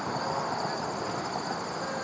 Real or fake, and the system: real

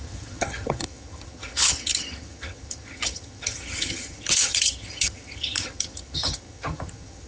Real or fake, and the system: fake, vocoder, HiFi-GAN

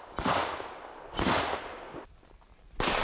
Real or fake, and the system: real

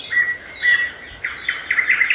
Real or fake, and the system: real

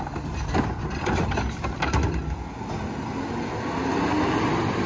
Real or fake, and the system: real